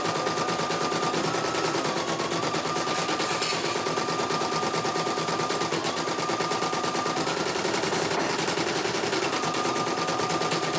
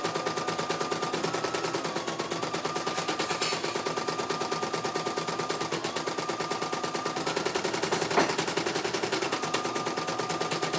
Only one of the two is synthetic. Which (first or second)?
first